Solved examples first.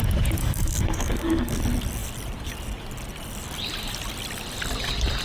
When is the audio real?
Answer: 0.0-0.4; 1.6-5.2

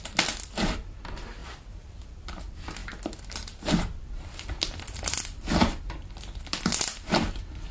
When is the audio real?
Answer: 0.0-1.4; 2.4-2.8

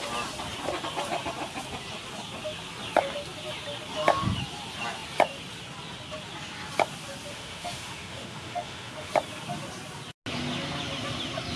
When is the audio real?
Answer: 0.0-7.3; 9.1-11.6

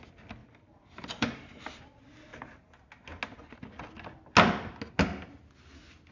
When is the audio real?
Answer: 0.0-0.4; 1.8-6.1

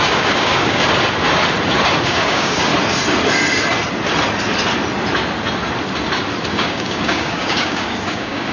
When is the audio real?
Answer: 0.8-2.0; 2.7-6.5